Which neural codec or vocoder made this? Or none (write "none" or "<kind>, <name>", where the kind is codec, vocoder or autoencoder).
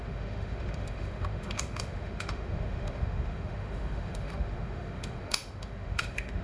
autoencoder, DAC-VAE